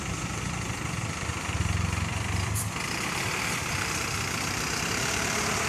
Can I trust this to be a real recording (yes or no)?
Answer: no